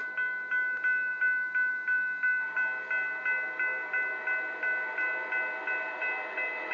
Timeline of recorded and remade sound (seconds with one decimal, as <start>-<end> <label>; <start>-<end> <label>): 0.0-6.7 recorded